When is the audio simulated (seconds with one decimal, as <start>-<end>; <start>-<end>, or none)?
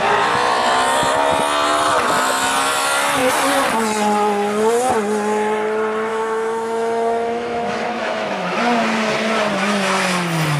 6.1-8.6